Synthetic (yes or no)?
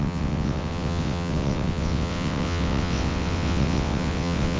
yes